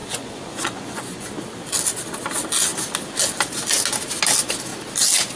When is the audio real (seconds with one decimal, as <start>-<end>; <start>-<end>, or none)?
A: 1.3-5.4